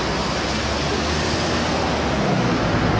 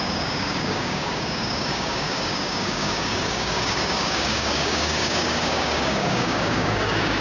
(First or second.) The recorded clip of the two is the first